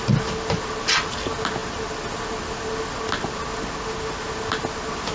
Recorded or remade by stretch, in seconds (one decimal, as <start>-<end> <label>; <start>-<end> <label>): 0.0-5.1 recorded